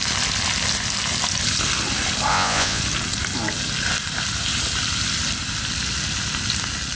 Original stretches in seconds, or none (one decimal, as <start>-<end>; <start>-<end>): 0.0-2.3; 2.8-6.9